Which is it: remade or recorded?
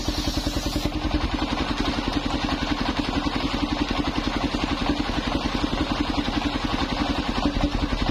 recorded